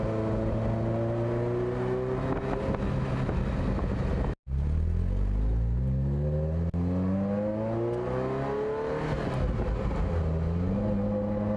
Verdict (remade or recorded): recorded